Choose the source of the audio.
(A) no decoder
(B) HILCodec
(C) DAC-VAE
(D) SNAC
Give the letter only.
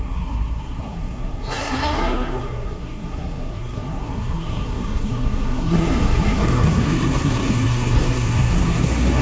D